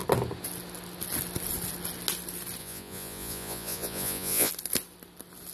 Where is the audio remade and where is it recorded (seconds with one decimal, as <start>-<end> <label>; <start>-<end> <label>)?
0.0-2.6 recorded; 2.6-4.5 remade; 4.5-5.5 recorded